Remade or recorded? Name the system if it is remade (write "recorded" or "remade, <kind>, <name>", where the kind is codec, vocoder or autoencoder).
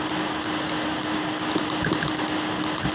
recorded